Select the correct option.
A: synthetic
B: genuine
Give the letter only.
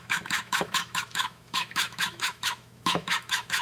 A